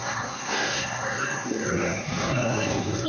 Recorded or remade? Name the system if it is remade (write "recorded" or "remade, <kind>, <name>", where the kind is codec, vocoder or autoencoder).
remade, codec, SNAC